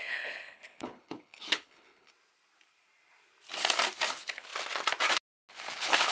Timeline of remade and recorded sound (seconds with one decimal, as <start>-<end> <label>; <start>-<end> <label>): 0.0-2.1 remade; 2.1-4.1 recorded; 4.1-4.5 remade; 4.5-5.5 recorded; 5.5-6.1 remade